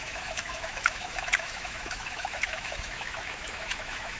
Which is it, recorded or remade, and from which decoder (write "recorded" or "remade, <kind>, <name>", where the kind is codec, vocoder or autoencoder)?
remade, autoencoder, DAC-VAE